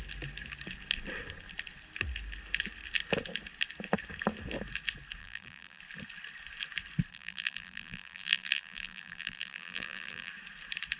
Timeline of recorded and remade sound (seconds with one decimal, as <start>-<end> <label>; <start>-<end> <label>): 0.0-5.2 recorded; 5.2-5.8 remade; 5.8-7.1 recorded; 7.1-10.3 remade; 10.3-11.0 recorded